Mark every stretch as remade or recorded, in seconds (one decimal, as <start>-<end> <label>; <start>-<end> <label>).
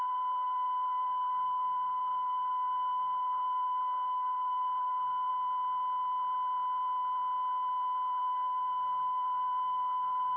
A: 0.0-5.3 remade; 5.3-8.2 recorded; 8.2-10.4 remade